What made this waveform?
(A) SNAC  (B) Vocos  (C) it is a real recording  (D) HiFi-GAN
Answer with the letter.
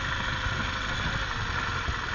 C